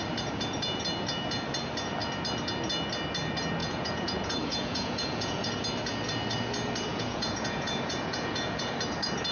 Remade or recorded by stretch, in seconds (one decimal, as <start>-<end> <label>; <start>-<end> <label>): 0.0-3.6 recorded; 3.6-5.5 remade; 5.5-6.9 recorded; 6.9-8.7 remade; 8.7-9.3 recorded